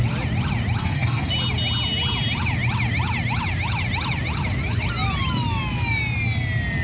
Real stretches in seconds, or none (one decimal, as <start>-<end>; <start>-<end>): 0.0-0.8; 1.3-6.8